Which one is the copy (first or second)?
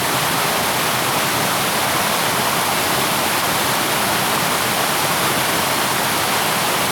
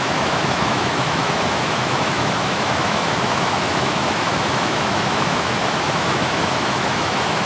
second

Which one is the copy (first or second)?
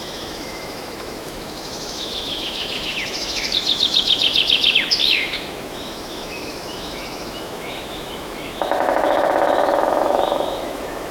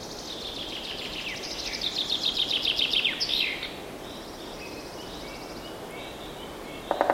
first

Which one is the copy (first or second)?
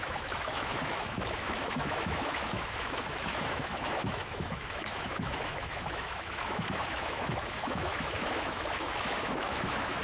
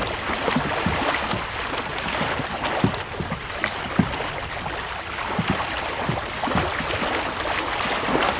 first